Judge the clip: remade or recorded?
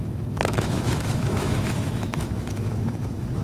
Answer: remade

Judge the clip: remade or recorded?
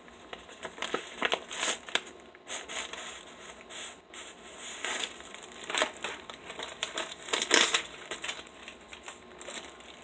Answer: recorded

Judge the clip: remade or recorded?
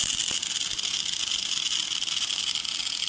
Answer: recorded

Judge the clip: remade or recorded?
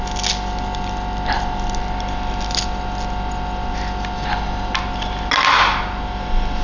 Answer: recorded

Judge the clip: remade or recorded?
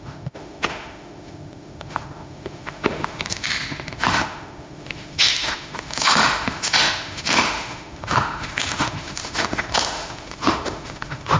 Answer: remade